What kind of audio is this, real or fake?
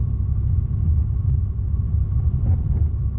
real